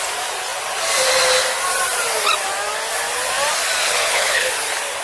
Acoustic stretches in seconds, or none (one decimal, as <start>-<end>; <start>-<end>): 0.0-3.8; 4.5-5.0